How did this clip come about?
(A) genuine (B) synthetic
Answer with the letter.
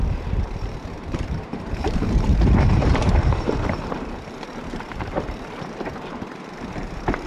B